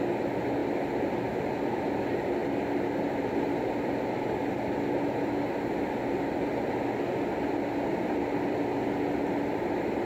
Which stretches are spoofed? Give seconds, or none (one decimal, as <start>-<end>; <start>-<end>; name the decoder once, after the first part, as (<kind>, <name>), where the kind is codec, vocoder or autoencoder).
none